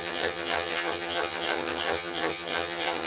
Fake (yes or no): yes